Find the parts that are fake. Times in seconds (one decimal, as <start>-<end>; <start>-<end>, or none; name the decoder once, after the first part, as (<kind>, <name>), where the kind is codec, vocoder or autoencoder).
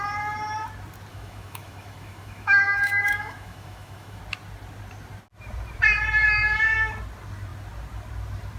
1.1-4.2 (autoencoder, DAC-VAE); 6.2-6.9